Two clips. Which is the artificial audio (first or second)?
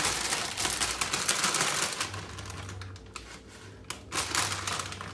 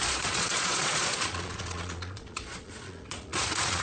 second